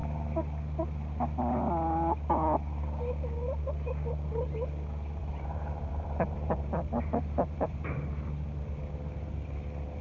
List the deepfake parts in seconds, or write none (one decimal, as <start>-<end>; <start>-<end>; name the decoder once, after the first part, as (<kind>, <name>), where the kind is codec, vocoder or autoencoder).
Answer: 5.2-8.1 (vocoder, BigVGAN v2)